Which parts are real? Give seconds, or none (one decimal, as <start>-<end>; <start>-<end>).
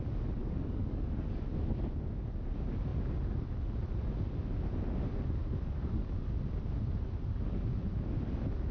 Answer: 0.0-0.4; 1.4-5.4; 6.3-8.7